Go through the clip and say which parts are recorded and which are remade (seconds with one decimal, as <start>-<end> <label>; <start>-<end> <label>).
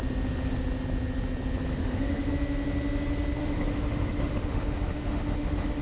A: 0.0-1.7 recorded; 1.7-2.3 remade; 2.3-3.4 recorded; 3.4-5.8 remade